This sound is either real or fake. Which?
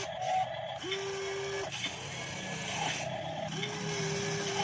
real